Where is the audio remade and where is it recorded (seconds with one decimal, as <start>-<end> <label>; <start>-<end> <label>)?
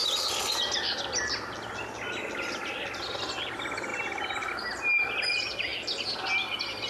0.0-3.9 recorded; 3.9-4.5 remade; 4.5-6.9 recorded